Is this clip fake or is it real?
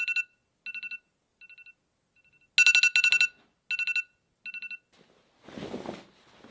real